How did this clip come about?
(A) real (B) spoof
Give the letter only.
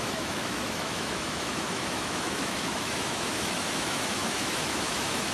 B